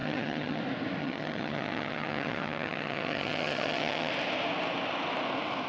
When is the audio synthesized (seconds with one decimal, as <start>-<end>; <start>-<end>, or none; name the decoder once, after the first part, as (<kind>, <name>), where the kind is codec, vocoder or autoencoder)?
0.0-0.6 (vocoder, HiFi-GAN); 1.0-4.1